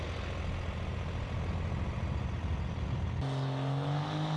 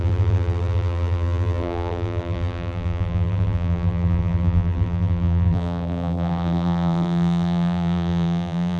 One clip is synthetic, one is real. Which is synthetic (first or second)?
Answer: second